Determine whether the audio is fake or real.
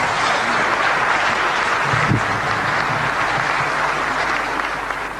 real